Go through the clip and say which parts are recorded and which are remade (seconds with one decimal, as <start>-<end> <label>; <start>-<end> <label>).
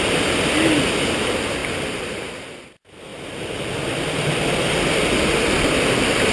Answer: 0.0-1.6 recorded; 1.6-2.3 remade; 2.3-3.1 recorded; 3.1-3.7 remade; 3.7-6.3 recorded